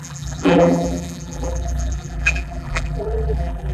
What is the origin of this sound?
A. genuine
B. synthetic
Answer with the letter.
B